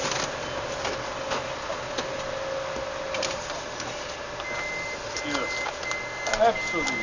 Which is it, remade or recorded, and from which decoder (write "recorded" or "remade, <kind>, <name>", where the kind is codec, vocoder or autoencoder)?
recorded